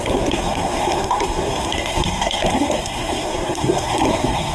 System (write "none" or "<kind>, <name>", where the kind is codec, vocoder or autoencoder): codec, SNAC